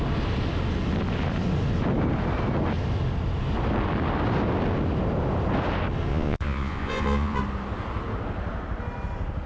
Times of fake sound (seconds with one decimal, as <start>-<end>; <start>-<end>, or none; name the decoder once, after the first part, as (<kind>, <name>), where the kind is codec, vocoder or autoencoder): 6.1-7.4 (vocoder, Vocos)